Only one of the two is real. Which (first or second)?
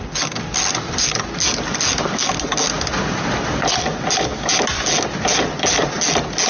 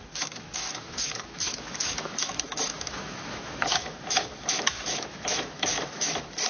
first